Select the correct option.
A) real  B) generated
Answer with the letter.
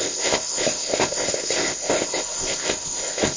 B